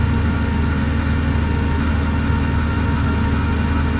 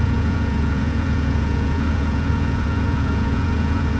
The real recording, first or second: first